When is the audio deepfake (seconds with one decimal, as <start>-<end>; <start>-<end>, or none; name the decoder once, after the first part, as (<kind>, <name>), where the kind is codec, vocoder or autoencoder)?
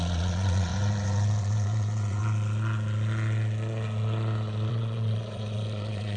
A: 0.0-0.7 (vocoder, Vocos); 1.4-2.2; 4.7-6.2